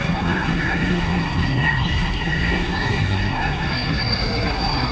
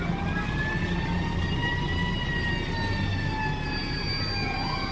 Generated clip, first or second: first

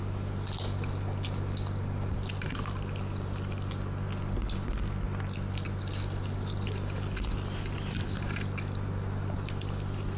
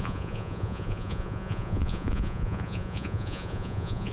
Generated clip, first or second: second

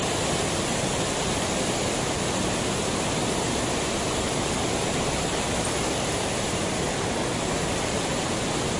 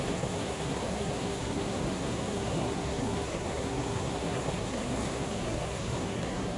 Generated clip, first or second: second